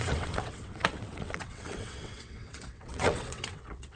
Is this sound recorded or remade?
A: remade